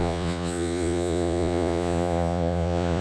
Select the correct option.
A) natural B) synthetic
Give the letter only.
B